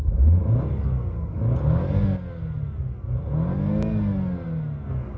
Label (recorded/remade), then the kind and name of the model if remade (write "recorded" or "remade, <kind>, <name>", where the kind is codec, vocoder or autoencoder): recorded